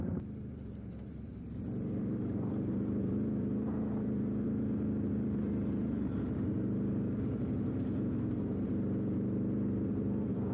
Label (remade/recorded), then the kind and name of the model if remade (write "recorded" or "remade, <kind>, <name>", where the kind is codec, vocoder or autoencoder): remade, vocoder, BigVGAN v2